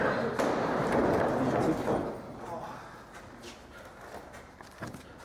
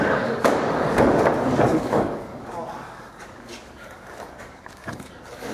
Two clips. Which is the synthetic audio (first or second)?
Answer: second